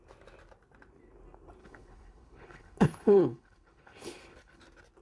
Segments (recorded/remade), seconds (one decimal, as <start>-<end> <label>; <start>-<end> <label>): 0.0-1.6 recorded; 1.6-4.6 remade; 4.6-5.0 recorded